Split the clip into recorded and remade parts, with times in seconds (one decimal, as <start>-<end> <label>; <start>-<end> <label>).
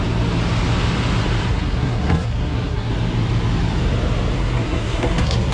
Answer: 0.0-1.5 recorded; 1.5-2.9 remade; 2.9-4.4 recorded; 4.4-5.5 remade